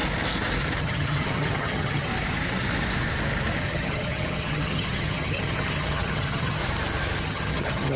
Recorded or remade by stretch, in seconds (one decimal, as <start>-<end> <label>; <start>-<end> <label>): 0.0-0.8 recorded; 0.8-2.1 remade; 2.1-3.6 recorded; 3.6-6.6 remade; 6.6-7.2 recorded; 7.2-8.0 remade